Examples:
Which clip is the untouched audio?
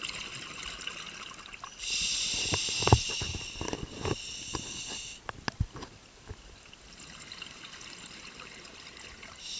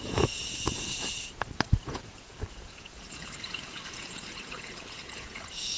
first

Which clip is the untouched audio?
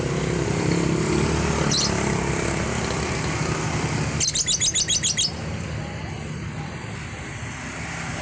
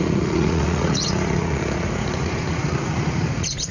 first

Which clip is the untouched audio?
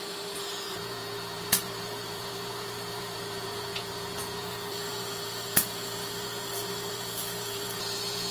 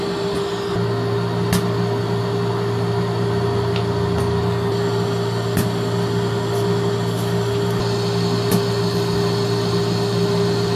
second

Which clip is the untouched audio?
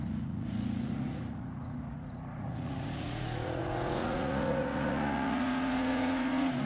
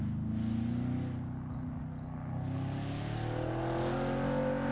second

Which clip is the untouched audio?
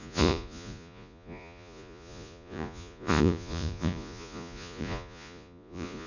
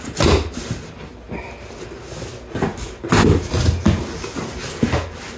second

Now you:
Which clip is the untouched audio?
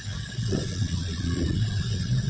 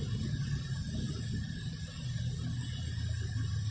second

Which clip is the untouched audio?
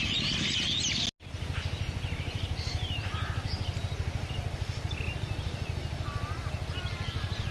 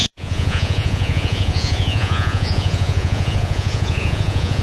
first